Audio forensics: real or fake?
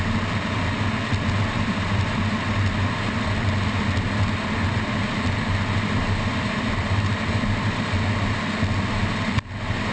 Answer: real